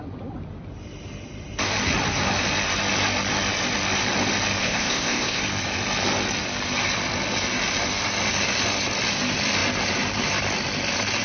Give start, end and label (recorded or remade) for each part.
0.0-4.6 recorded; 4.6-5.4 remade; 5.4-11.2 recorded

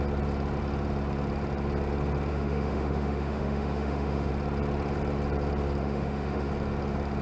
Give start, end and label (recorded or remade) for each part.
0.0-2.3 recorded; 2.3-4.3 remade; 4.3-5.8 recorded; 5.8-6.5 remade; 6.5-7.2 recorded

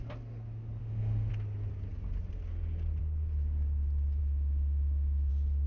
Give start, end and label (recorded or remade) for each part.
0.0-0.8 recorded; 0.8-1.3 remade; 1.3-4.2 recorded; 4.2-5.3 remade; 5.3-5.7 recorded

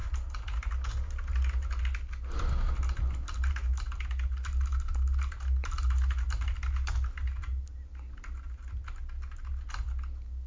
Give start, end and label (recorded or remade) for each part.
0.0-10.5 recorded

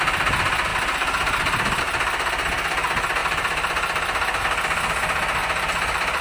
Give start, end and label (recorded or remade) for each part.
0.0-3.2 recorded; 3.2-4.4 remade; 4.4-5.4 recorded; 5.4-6.2 remade

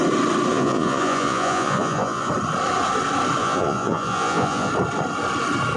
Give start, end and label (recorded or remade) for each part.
0.0-0.5 recorded; 0.5-2.3 remade; 2.3-3.4 recorded; 3.4-4.7 remade; 4.7-5.8 recorded

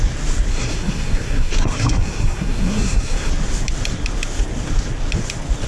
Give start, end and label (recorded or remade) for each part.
0.0-0.5 recorded; 0.5-3.3 remade; 3.3-5.7 recorded